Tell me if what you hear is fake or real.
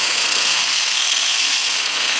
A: fake